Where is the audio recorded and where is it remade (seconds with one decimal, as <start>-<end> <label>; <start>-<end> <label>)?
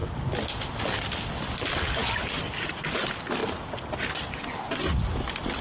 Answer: 0.0-5.6 recorded